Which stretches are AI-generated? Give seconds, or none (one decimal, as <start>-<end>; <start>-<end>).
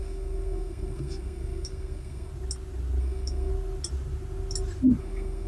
0.0-2.3; 3.0-3.5; 5.0-5.5